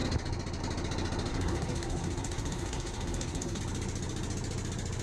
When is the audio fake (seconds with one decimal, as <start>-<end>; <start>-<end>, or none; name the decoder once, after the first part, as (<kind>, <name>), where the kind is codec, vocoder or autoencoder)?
1.3-3.6 (codec, SNAC)